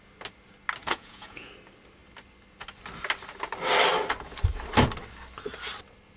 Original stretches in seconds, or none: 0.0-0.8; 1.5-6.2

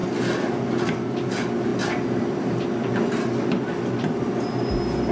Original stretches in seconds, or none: 0.0-5.1

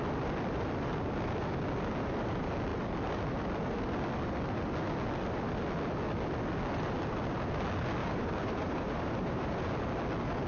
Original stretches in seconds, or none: 0.0-8.0; 9.7-10.5